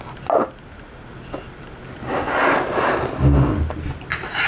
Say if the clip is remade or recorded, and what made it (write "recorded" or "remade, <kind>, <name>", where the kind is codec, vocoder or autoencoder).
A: recorded